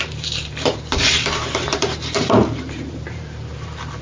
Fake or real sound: fake